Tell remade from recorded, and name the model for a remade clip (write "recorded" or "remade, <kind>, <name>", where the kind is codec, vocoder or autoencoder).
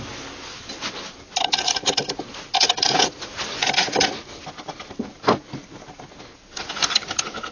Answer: recorded